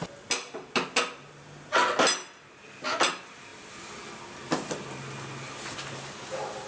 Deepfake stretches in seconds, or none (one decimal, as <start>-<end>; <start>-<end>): none